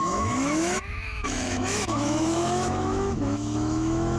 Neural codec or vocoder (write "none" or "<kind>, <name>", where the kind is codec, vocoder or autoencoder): autoencoder, DAC-VAE